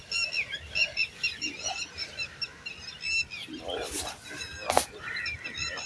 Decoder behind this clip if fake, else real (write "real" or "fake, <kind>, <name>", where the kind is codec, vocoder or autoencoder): real